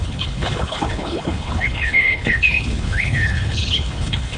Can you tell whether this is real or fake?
fake